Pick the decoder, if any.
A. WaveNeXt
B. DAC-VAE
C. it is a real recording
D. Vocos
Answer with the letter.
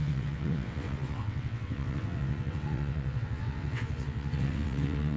A